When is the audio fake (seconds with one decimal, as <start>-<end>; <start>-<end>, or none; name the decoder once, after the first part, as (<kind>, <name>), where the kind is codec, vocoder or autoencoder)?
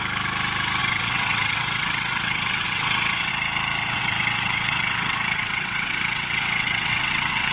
0.8-3.3 (vocoder, WaveNeXt); 3.8-7.5